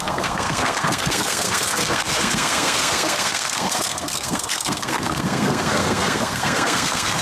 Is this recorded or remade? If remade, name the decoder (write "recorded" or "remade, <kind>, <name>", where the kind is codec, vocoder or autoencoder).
remade, codec, SNAC